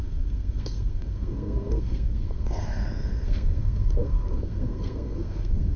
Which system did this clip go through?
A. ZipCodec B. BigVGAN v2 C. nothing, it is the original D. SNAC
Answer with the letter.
D